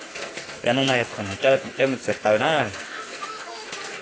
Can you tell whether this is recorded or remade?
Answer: remade